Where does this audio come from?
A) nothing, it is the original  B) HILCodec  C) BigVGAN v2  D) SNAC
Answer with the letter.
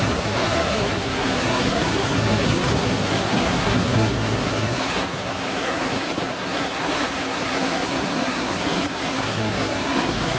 D